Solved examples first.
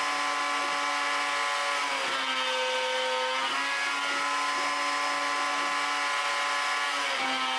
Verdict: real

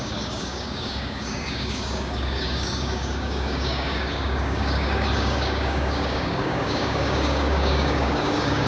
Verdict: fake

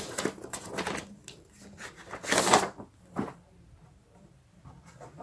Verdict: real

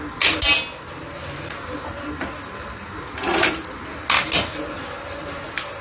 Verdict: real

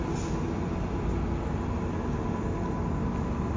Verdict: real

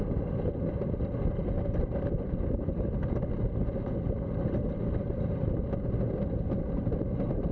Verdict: real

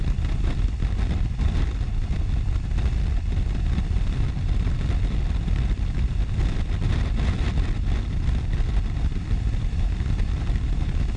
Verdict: real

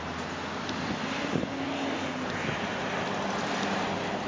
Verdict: real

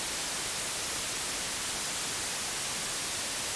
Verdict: real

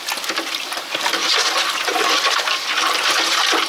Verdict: real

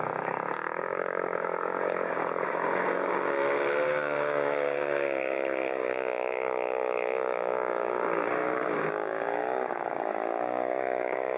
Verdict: fake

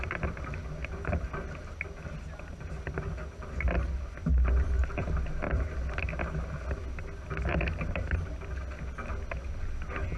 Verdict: real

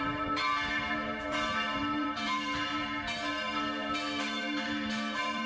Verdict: fake